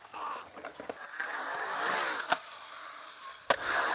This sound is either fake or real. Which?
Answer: real